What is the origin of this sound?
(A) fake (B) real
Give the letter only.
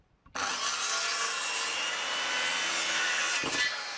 B